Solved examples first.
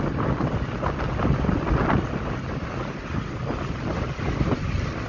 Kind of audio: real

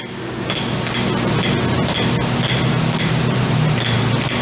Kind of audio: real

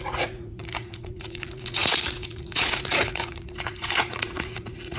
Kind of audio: fake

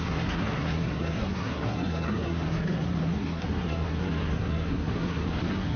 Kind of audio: fake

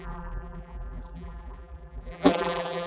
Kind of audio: fake